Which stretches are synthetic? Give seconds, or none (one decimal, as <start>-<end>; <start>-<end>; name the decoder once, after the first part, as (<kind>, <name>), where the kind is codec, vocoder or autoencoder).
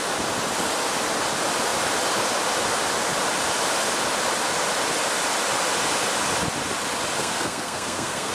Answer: 7.2-8.3 (codec, SNAC)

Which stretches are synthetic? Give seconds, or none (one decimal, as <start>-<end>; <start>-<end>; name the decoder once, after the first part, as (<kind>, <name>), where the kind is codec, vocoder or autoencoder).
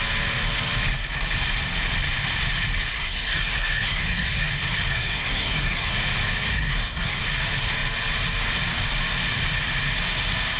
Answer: 2.9-4.5 (codec, SNAC); 4.9-5.9; 6.5-7.2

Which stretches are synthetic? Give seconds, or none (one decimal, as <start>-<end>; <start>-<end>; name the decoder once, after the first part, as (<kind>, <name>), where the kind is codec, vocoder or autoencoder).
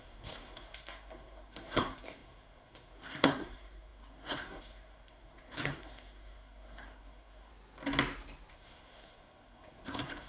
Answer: 0.0-7.5 (codec, SNAC); 8.5-10.3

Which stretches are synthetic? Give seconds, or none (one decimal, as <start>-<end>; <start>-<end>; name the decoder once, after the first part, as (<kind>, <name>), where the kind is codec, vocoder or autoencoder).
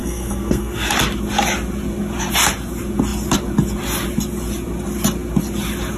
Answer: 0.0-0.9 (codec, SNAC)